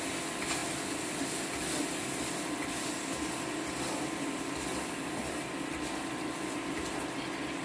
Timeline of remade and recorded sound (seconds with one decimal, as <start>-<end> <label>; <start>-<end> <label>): 0.0-7.6 recorded